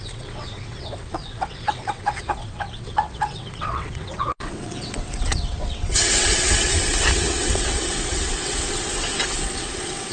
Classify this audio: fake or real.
fake